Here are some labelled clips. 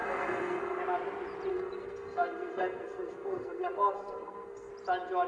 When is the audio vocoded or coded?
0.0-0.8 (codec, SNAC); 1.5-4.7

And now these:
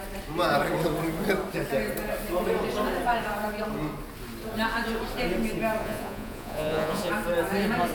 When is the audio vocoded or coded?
5.8-7.1 (vocoder, Vocos)

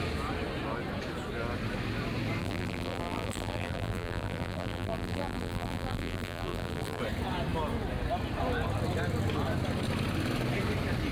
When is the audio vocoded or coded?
2.4-7.0 (vocoder, BigVGAN v2)

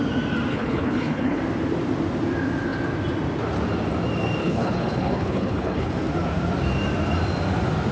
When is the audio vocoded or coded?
0.5-1.4 (codec, HILCodec); 4.4-5.9